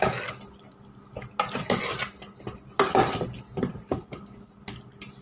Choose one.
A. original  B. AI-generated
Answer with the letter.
A